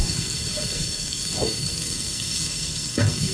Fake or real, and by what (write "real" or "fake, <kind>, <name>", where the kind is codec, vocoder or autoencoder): fake, codec, SNAC